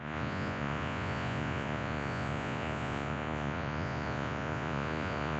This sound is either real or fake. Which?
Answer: fake